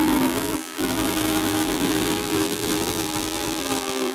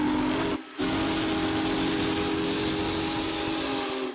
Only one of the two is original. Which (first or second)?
second